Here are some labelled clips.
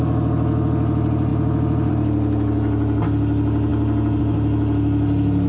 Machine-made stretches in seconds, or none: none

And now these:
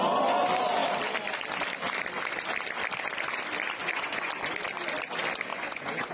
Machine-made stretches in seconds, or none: 3.8-4.3 (vocoder, Vocos); 5.5-6.1

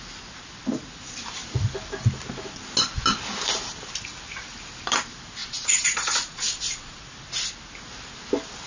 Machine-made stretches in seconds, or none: 5.4-7.0 (vocoder, Vocos)

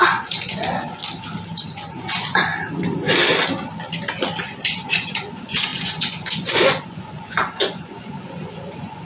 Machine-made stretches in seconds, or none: 0.0-1.0 (vocoder, Vocos); 1.7-2.5; 4.4-9.0

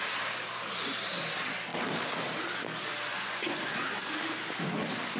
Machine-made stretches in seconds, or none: 3.1-3.6 (vocoder, Vocos)